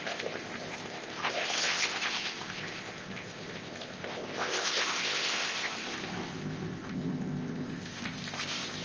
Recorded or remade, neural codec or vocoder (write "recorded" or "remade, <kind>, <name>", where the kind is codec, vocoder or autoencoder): remade, codec, ZipCodec